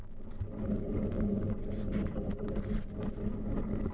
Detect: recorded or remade recorded